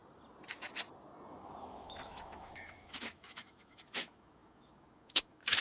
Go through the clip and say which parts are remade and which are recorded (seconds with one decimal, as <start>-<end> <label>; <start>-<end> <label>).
0.0-1.6 recorded; 1.6-5.6 remade